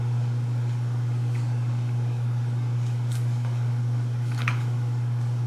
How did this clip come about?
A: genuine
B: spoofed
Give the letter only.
B